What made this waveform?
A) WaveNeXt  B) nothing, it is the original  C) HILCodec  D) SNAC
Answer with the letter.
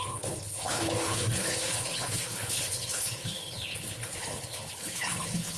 C